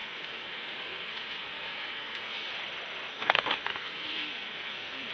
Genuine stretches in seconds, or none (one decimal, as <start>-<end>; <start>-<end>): 2.5-3.1